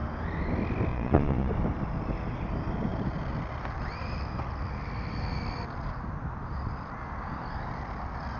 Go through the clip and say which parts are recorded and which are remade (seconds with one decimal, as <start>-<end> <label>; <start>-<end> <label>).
0.0-0.9 recorded; 0.9-1.5 remade; 1.5-8.4 recorded